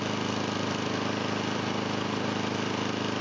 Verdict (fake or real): real